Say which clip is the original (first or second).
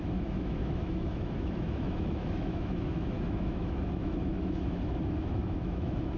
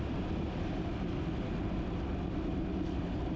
second